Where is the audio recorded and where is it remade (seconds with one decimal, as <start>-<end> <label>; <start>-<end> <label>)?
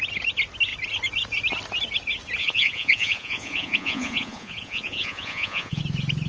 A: 0.0-2.4 recorded; 2.4-5.8 remade; 5.8-6.3 recorded